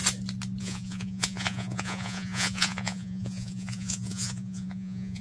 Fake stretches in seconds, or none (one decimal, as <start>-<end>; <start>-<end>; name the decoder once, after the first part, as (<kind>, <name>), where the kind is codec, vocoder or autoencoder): 0.6-5.2 (vocoder, Vocos)